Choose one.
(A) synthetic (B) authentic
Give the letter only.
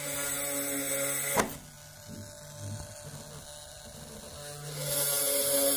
B